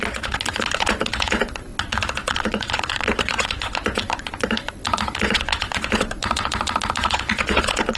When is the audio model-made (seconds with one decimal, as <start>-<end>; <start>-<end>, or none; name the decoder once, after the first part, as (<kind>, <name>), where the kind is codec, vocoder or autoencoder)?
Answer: 0.0-8.0 (vocoder, Vocos)